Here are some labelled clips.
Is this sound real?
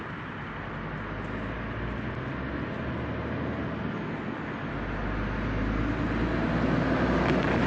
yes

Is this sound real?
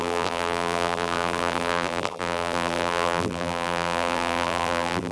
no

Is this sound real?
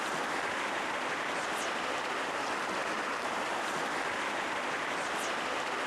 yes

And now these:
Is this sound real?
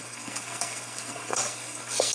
no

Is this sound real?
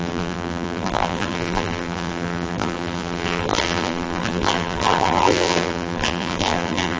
no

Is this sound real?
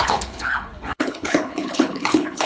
no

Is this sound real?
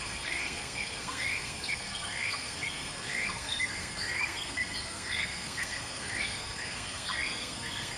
no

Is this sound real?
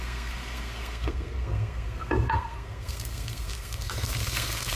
no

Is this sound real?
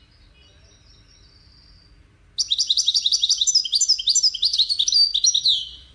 yes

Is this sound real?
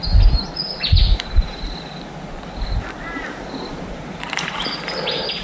yes